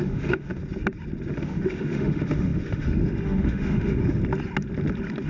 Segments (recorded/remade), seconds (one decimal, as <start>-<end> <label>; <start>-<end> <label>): 0.0-0.6 remade; 0.6-1.3 recorded; 1.3-4.2 remade; 4.2-5.3 recorded